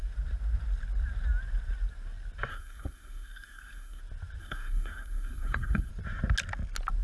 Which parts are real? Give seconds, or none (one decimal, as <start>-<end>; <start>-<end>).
0.0-2.5; 4.0-4.4; 5.9-7.0